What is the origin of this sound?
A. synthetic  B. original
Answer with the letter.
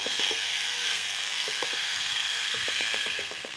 A